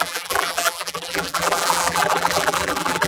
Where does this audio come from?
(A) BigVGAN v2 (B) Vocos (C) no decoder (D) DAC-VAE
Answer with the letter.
A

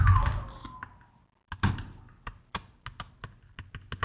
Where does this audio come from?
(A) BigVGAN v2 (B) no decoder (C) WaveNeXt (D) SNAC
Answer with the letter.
B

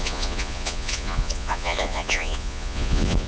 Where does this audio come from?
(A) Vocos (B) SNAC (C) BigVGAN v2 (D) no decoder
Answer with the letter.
A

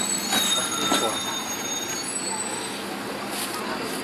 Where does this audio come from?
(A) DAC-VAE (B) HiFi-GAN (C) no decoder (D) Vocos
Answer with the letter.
C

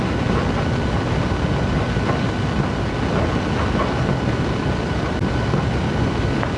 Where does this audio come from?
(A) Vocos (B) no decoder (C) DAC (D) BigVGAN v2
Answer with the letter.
B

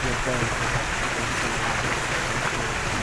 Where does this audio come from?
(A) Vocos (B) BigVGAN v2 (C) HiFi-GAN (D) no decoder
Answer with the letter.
D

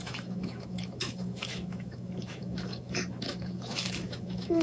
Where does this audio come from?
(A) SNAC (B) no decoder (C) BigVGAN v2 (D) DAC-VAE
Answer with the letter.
D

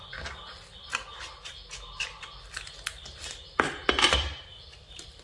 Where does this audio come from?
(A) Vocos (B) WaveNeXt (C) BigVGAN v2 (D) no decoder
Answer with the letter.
C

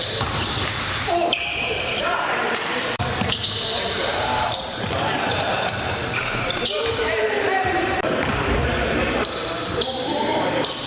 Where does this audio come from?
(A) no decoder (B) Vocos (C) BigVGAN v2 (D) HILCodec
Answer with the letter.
C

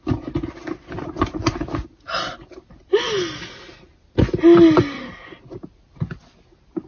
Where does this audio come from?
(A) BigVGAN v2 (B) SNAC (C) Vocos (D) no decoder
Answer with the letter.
D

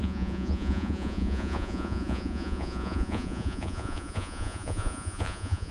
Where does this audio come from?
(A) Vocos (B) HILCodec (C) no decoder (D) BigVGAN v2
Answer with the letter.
A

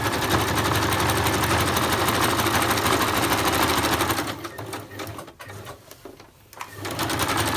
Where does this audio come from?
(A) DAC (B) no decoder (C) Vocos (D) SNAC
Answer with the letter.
B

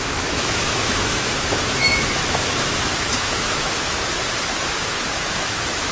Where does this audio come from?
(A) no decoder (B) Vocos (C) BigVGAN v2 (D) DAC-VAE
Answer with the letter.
D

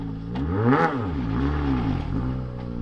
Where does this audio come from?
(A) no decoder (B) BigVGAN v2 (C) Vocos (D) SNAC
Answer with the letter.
A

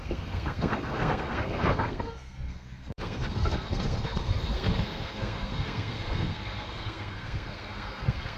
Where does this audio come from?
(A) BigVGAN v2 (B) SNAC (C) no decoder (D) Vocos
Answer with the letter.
B